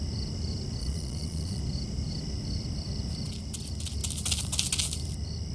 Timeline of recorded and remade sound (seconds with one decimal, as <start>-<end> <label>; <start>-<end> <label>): 0.0-0.8 recorded; 0.8-1.6 remade; 1.6-5.5 recorded